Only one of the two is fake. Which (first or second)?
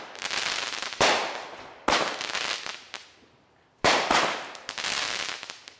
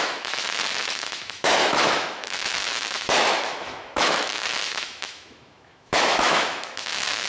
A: second